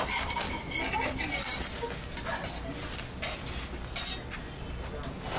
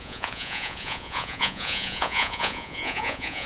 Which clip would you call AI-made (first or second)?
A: second